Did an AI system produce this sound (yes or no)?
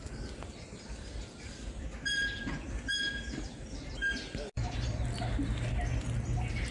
no